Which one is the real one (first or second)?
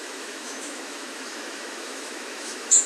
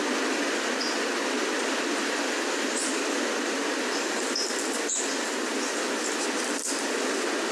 second